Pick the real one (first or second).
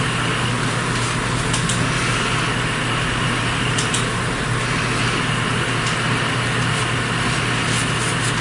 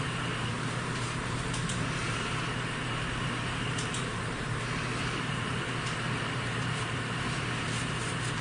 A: first